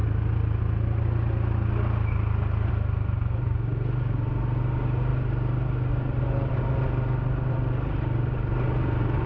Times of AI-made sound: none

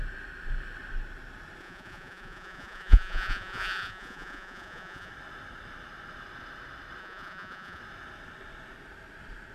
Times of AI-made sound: 1.6-5.1 (vocoder, Vocos); 7.0-7.8

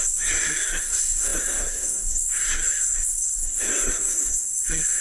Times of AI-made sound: 0.0-5.0 (codec, SNAC)

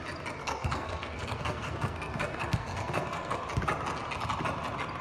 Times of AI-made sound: 0.4-3.4 (codec, SNAC)

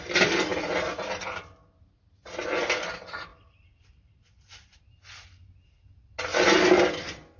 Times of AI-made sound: none

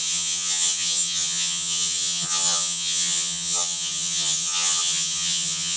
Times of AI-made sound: 0.0-5.8 (vocoder, HiFi-GAN)

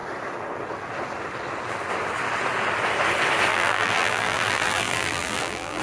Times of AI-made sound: 3.5-5.8 (vocoder, BigVGAN v2)